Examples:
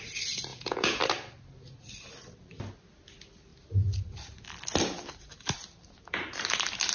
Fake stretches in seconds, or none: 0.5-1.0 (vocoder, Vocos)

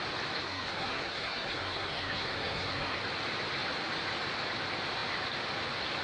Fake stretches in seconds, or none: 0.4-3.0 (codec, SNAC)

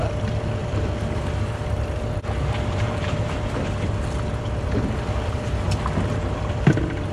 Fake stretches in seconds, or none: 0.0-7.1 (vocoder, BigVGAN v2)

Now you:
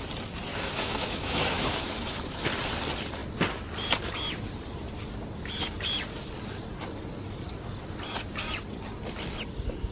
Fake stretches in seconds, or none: 0.5-2.5 (autoencoder, DAC-VAE)

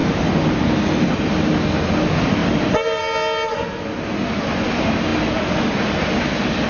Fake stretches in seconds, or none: 0.0-0.8 (vocoder, BigVGAN v2); 2.4-3.0